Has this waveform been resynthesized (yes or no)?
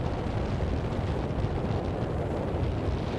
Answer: no